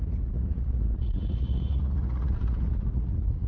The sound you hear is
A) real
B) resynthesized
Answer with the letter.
B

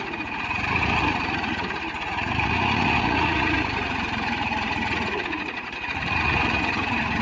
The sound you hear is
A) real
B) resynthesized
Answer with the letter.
B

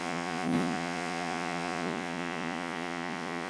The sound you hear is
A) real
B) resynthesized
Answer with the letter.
B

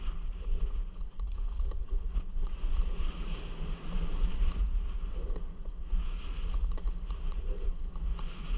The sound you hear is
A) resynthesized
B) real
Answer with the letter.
A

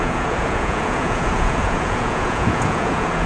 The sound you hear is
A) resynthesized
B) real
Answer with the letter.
A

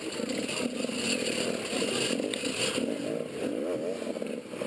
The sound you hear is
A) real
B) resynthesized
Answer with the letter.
A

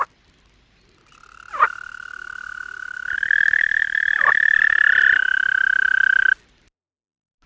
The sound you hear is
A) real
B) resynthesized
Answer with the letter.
A